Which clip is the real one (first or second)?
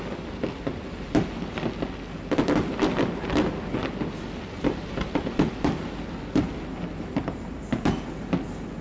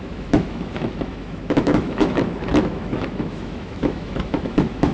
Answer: first